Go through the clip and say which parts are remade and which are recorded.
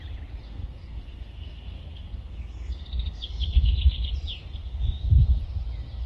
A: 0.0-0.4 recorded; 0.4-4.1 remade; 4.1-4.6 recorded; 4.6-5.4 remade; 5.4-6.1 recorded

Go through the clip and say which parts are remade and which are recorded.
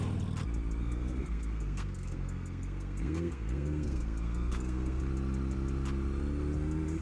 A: 0.0-0.8 recorded; 0.8-5.0 remade; 5.0-7.0 recorded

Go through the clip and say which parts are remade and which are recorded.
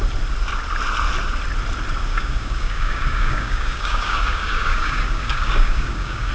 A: 0.0-2.1 recorded; 2.1-6.3 remade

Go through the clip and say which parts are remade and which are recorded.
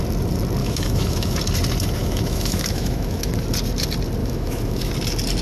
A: 0.0-0.6 recorded; 0.6-1.4 remade; 1.4-2.0 recorded; 2.0-3.3 remade; 3.3-4.2 recorded; 4.2-4.9 remade; 4.9-5.4 recorded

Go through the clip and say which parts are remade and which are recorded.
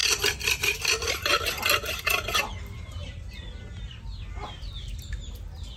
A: 0.0-5.8 recorded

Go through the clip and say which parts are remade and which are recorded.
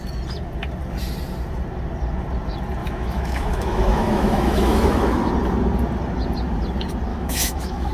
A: 0.0-2.8 recorded; 2.8-5.3 remade; 5.3-7.1 recorded; 7.1-7.9 remade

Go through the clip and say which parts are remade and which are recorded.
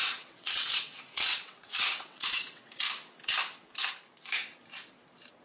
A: 0.0-2.7 remade; 2.7-5.4 recorded